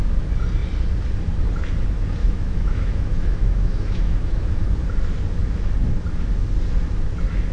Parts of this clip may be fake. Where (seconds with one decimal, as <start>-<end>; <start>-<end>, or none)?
2.2-4.7